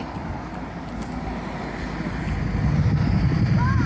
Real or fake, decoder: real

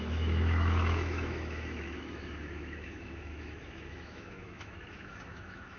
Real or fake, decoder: fake, autoencoder, DAC-VAE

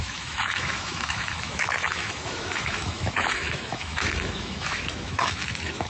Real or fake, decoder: fake, autoencoder, DAC-VAE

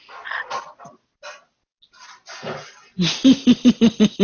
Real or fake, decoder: real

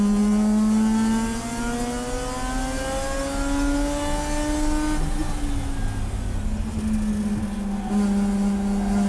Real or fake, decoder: real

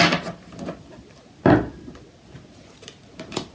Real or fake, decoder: real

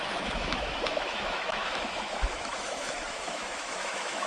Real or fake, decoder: fake, autoencoder, DAC-VAE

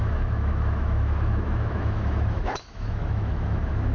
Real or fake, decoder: fake, autoencoder, DAC-VAE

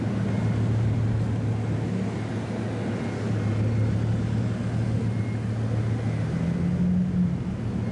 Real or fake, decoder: real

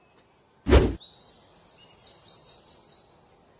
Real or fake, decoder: real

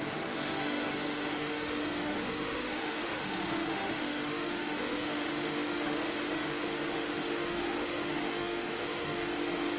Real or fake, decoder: fake, autoencoder, DAC-VAE